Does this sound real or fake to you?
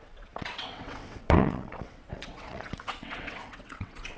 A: fake